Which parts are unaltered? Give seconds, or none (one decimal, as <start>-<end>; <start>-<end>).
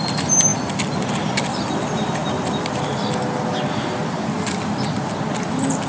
0.0-5.9